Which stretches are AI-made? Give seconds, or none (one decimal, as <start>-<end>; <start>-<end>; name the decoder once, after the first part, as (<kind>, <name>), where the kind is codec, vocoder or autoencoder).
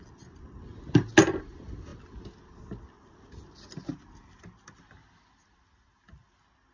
none